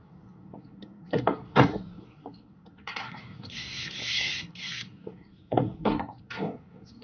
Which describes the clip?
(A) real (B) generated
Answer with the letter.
B